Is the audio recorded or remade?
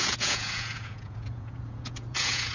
remade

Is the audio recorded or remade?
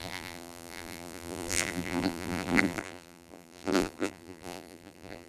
remade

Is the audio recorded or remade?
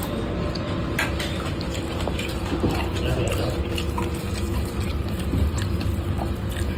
recorded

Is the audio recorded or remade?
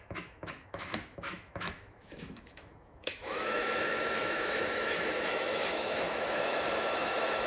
remade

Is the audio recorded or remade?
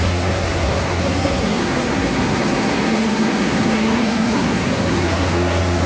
remade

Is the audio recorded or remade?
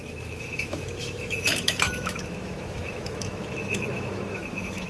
remade